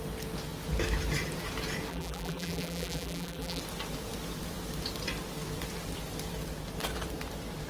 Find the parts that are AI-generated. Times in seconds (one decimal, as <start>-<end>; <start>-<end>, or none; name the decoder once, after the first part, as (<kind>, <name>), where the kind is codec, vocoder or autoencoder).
1.9-3.6 (vocoder, BigVGAN v2)

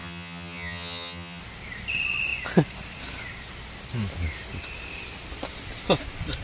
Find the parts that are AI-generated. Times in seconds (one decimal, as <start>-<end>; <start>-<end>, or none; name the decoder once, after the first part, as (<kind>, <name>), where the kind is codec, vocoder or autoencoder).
0.0-1.4 (vocoder, HiFi-GAN)

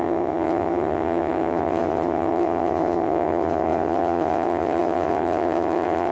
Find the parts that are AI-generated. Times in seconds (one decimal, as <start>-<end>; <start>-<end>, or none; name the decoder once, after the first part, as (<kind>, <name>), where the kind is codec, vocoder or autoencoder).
0.0-6.1 (vocoder, HiFi-GAN)

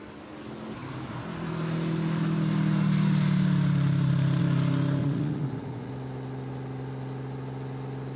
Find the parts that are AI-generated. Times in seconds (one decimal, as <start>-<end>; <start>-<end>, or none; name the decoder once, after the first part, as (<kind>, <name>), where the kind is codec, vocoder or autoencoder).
5.0-5.9 (vocoder, Vocos)

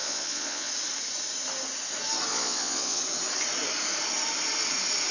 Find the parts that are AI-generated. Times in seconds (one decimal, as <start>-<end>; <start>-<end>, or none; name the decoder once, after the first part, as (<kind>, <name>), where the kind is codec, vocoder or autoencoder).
0.0-0.7 (vocoder, Vocos); 2.3-3.0